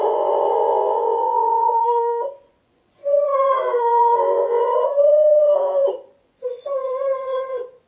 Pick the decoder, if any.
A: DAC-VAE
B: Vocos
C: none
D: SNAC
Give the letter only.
B